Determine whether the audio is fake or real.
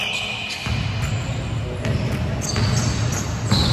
real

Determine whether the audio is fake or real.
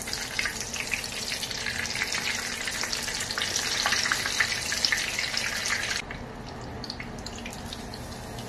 real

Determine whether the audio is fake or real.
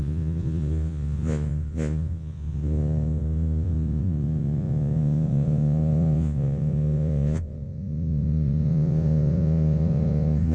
fake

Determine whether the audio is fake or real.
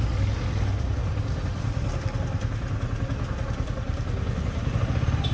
real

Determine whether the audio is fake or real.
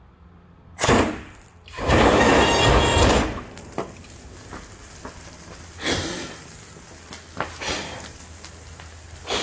real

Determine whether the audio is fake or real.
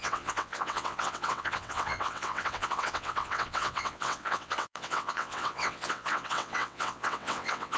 fake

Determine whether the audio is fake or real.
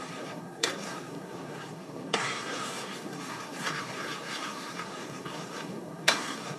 fake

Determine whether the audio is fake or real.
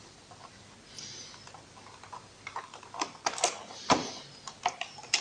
real